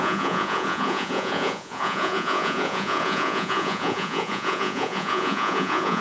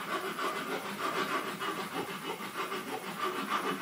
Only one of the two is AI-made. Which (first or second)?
first